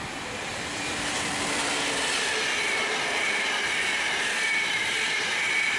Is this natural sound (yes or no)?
yes